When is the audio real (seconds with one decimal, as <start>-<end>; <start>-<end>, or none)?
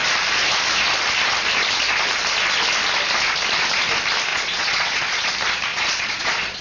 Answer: 0.0-4.3; 5.3-5.7